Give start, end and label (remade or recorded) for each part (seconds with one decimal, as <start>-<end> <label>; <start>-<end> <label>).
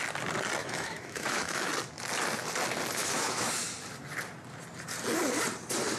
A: 0.0-0.6 recorded; 0.6-1.7 remade; 1.7-3.0 recorded; 3.0-3.5 remade; 3.5-6.0 recorded